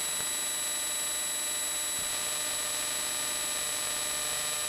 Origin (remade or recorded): recorded